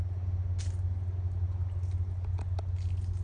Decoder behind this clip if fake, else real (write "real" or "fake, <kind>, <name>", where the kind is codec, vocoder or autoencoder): real